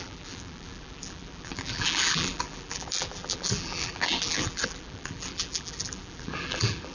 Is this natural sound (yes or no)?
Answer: no